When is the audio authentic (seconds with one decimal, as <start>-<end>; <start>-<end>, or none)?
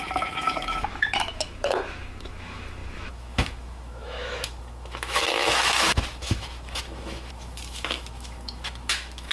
none